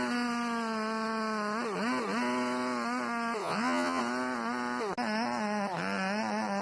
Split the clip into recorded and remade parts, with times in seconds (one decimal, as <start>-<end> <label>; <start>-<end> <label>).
0.0-3.4 recorded; 3.4-4.0 remade; 4.0-6.6 recorded